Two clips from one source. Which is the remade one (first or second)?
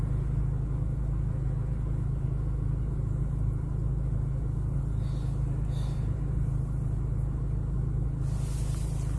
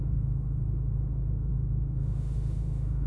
second